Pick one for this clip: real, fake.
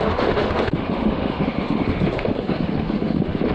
fake